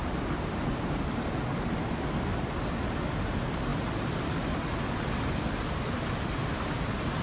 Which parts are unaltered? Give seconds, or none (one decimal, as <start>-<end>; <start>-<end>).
0.0-7.2